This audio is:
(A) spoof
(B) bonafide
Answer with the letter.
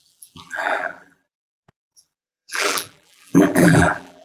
A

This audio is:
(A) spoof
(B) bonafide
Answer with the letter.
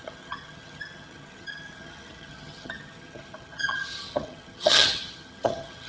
A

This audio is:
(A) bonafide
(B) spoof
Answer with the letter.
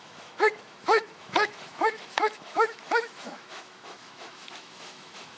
B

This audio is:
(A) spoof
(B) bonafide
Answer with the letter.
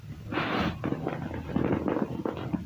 B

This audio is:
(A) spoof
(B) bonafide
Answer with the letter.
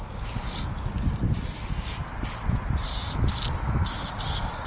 B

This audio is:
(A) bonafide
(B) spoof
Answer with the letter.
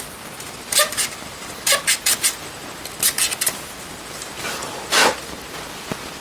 A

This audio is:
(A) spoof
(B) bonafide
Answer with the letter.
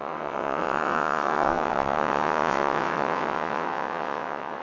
A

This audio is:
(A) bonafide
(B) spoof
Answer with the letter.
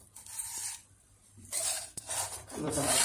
B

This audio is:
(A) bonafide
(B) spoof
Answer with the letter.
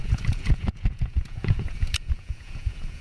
B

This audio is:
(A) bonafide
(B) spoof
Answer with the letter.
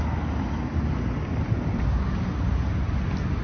A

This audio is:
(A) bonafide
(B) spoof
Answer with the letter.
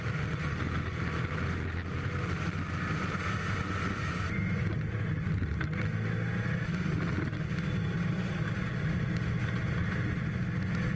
A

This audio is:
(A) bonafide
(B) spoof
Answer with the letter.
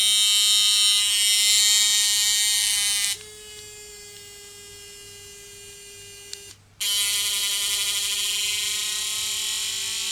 A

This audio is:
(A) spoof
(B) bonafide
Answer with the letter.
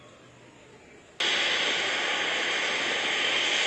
B